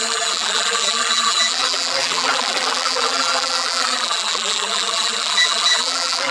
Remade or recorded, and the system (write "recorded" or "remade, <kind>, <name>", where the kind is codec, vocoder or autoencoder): remade, vocoder, BigVGAN v2